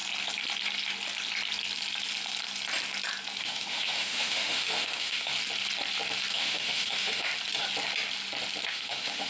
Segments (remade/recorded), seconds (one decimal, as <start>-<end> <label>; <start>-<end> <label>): 0.0-3.4 recorded; 3.4-5.3 remade; 5.3-6.3 recorded; 6.3-7.3 remade; 7.3-8.7 recorded; 8.7-9.3 remade

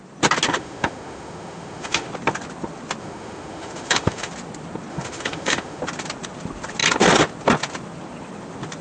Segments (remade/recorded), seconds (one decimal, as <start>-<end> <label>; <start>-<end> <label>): 0.0-0.5 recorded; 0.5-2.1 remade; 2.1-3.0 recorded; 3.0-4.3 remade; 4.3-4.9 recorded; 4.9-5.8 remade; 5.8-8.8 recorded